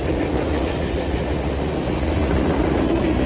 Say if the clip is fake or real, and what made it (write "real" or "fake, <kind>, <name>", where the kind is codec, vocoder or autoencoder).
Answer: fake, vocoder, Vocos